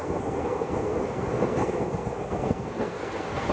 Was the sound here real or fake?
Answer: fake